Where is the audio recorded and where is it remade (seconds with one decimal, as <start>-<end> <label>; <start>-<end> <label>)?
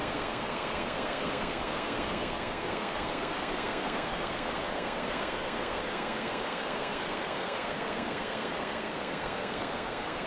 0.0-10.3 remade